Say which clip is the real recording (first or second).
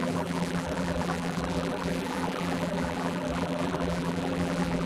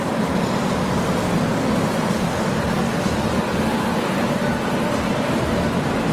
second